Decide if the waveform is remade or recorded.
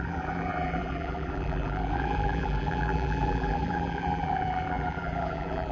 remade